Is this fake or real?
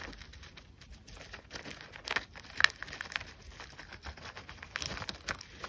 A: real